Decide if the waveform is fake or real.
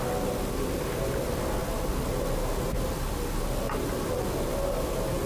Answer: real